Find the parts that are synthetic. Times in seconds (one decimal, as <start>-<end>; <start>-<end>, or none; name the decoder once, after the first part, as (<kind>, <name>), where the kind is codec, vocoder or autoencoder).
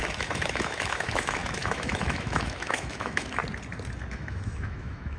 0.0-3.4 (autoencoder, DAC-VAE); 4.1-5.2